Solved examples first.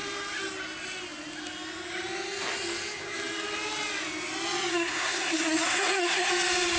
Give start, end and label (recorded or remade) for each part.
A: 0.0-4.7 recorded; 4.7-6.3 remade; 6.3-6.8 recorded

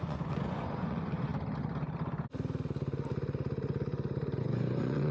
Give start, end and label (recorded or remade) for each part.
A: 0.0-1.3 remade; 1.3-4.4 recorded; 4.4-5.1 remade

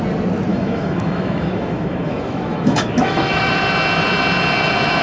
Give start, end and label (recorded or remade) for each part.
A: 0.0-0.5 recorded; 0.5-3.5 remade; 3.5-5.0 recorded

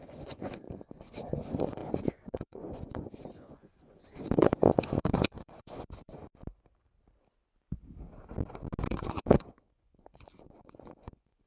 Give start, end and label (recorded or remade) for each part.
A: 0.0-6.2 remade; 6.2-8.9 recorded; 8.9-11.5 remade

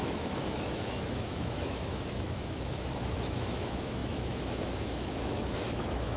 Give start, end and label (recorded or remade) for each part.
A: 0.0-6.2 remade